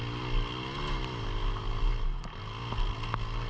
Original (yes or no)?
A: yes